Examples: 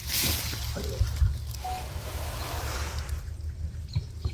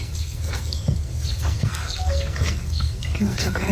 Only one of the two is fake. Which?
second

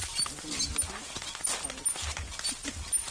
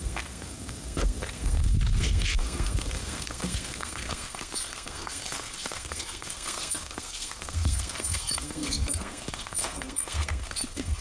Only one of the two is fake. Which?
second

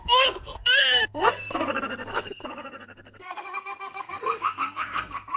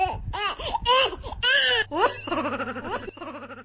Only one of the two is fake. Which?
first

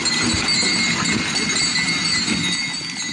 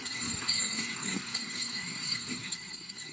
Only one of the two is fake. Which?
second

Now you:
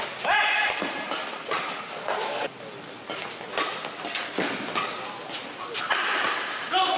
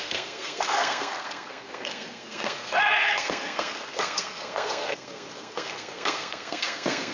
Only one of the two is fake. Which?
second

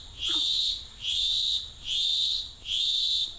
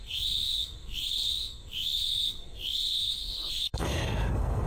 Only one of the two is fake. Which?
second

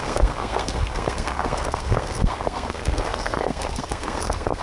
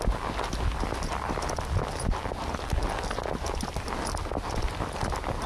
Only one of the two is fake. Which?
first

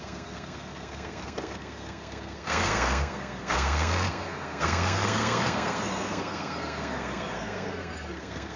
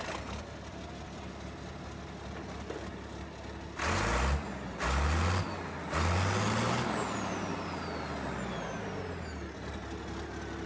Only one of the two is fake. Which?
first